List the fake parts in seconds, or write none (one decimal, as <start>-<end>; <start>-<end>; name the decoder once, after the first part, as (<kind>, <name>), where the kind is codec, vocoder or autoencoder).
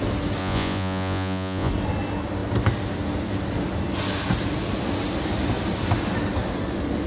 0.4-1.7 (vocoder, Vocos)